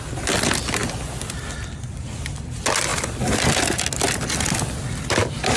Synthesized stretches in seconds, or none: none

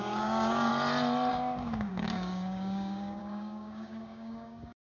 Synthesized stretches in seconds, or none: 0.0-0.7 (codec, DAC); 1.3-5.0

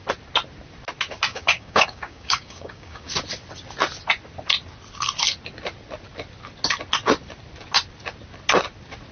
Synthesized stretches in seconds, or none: 1.3-3.1 (codec, DAC)

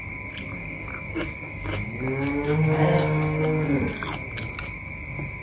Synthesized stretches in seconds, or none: 0.6-3.8 (codec, DAC)

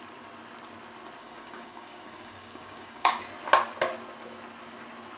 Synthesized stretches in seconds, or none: 1.2-3.2 (codec, DAC)